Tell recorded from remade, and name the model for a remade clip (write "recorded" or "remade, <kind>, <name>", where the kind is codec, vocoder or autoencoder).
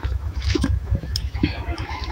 remade, autoencoder, DAC-VAE